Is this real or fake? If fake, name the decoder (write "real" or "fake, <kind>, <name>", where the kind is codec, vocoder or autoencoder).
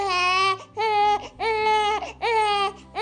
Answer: real